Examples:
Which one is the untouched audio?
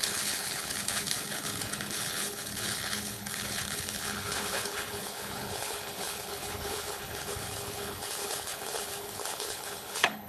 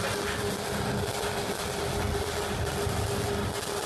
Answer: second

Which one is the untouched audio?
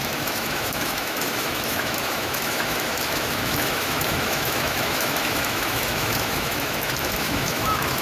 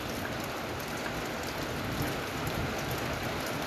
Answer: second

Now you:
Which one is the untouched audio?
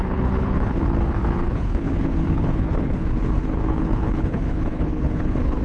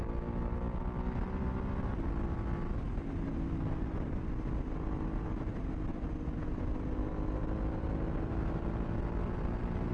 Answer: second